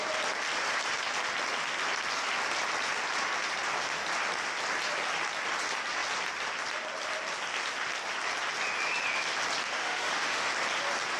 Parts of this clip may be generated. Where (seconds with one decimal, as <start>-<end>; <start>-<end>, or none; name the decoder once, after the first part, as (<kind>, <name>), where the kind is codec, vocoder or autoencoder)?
9.8-10.5 (autoencoder, DAC-VAE)